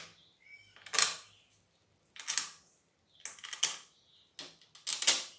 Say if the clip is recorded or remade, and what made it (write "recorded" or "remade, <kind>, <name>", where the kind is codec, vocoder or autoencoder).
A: recorded